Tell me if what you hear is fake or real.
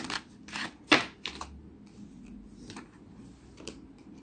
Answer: real